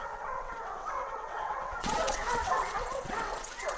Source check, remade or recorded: remade